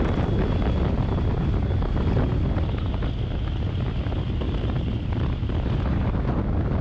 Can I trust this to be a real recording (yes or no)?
yes